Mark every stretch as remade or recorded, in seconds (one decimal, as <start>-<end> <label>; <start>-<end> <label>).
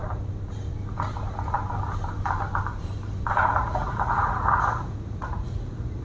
0.0-3.6 recorded; 3.6-6.0 remade